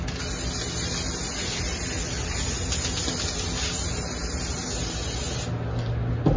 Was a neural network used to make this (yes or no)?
no